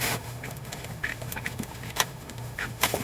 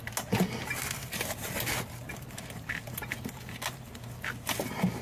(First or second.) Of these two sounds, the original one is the second